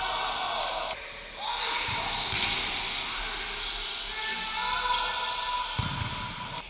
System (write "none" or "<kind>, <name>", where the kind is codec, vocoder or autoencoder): none